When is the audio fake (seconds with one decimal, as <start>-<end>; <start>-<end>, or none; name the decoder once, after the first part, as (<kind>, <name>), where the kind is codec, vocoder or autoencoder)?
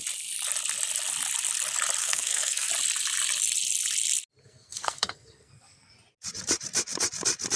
2.0-2.7 (codec, SNAC); 4.4-5.9